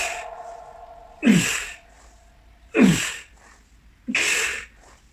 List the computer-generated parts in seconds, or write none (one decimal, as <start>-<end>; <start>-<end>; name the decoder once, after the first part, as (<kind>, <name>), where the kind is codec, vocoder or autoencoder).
none

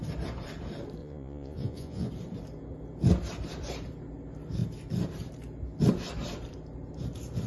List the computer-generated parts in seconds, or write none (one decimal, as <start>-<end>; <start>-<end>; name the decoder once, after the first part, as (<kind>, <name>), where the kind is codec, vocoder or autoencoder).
1.0-2.1 (vocoder, Vocos)

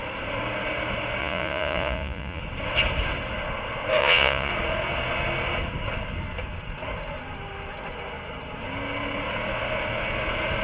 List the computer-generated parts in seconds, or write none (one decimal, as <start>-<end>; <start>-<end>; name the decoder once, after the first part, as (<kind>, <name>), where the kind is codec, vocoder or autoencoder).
1.2-2.4 (vocoder, Vocos); 4.0-4.5

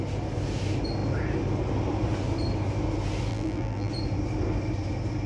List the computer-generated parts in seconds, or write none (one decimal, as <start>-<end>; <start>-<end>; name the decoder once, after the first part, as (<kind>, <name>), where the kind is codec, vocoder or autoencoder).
3.3-3.9 (vocoder, BigVGAN v2)